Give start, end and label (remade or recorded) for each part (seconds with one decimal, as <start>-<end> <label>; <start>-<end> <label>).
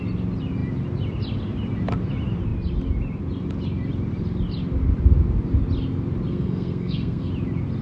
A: 0.0-6.3 recorded; 6.3-7.3 remade; 7.3-7.8 recorded